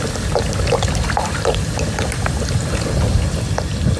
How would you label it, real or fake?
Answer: real